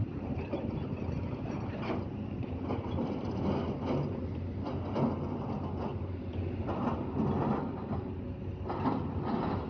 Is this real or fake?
real